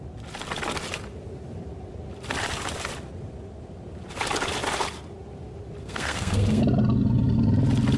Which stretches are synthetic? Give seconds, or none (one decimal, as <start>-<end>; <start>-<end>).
5.8-6.6